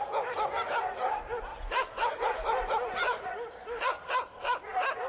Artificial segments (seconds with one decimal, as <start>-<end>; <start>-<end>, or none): none